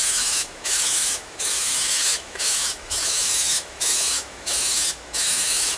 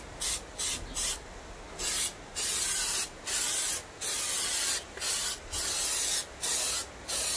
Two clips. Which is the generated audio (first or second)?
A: first